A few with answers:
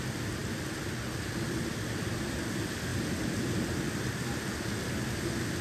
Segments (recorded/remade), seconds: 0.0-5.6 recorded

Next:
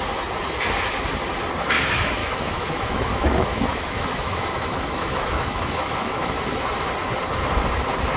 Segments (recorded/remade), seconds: 0.0-2.2 recorded; 2.2-6.4 remade; 6.4-8.2 recorded